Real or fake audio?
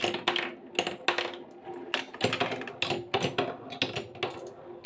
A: real